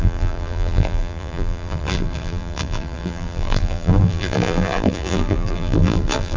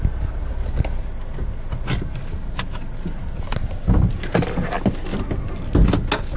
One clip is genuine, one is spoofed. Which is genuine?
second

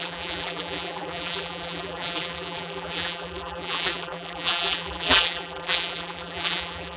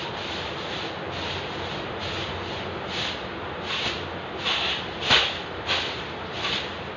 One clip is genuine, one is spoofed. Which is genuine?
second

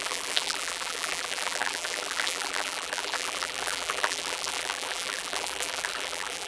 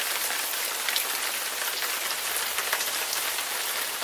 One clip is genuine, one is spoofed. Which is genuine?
second